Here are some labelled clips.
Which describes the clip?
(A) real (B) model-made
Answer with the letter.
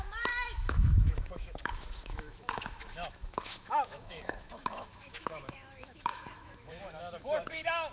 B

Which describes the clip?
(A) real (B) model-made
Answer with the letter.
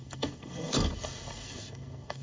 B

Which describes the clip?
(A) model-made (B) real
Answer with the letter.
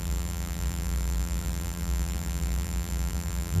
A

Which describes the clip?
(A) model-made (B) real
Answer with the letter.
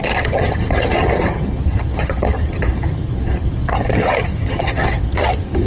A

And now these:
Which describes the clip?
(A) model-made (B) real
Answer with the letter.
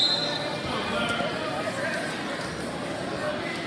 B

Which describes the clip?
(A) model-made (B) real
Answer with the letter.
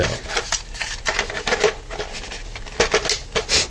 B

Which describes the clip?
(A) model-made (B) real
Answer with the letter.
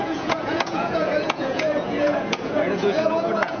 A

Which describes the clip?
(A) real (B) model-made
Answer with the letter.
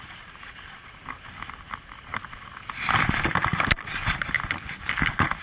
A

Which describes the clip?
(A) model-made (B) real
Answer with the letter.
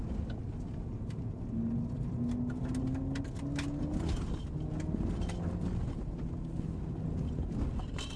B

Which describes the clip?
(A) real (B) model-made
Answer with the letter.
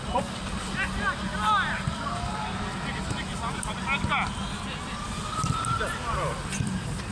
A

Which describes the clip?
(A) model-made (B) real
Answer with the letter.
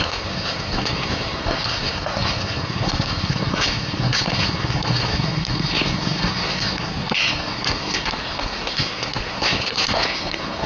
A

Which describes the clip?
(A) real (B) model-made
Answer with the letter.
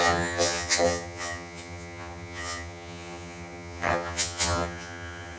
B